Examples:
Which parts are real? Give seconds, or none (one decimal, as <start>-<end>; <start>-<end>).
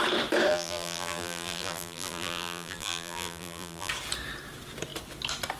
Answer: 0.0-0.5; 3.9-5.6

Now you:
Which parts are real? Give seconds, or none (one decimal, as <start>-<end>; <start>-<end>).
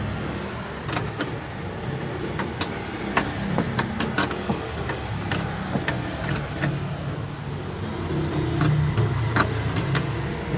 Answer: 0.0-4.2; 4.7-10.6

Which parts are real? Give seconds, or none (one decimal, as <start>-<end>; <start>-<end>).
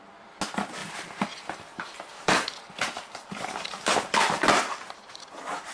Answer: 0.0-0.8; 4.2-5.7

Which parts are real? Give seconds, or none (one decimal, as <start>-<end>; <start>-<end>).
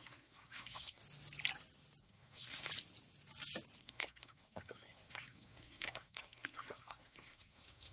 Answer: 1.0-2.0; 2.7-3.8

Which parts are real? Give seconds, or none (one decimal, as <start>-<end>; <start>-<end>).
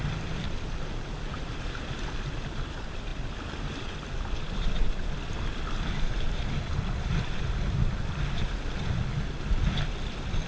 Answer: 0.0-10.5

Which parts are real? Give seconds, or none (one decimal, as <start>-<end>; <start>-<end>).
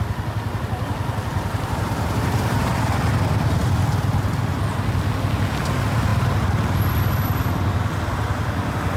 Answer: 0.0-1.3; 2.7-9.0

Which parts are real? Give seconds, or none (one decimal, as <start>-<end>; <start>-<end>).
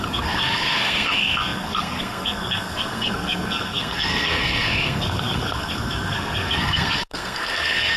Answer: none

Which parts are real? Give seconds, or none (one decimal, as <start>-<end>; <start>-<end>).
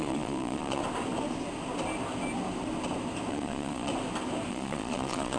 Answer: 0.8-3.3; 3.9-4.5